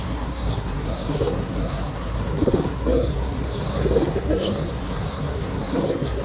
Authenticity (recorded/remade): remade